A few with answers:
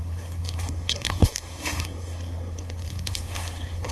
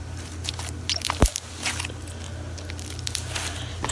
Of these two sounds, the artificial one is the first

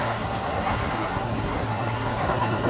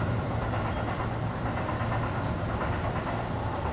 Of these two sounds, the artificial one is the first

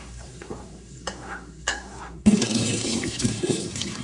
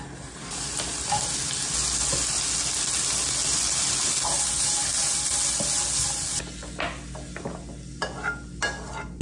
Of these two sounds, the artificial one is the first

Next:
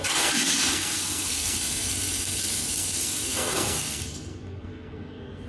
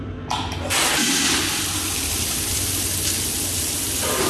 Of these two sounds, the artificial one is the first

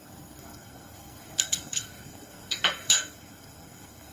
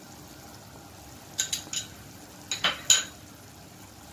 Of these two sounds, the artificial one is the first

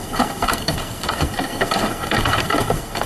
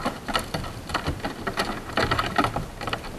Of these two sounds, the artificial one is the first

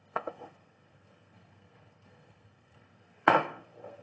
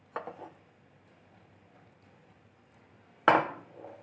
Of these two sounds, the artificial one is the first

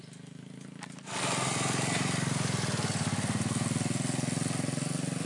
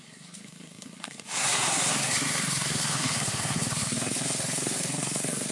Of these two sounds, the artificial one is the second